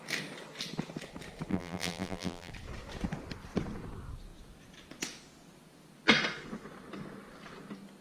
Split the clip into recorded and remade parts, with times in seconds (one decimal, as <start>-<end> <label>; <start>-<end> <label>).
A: 0.0-1.5 recorded; 1.5-2.5 remade; 2.5-8.0 recorded